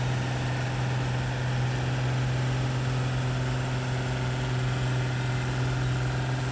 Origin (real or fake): real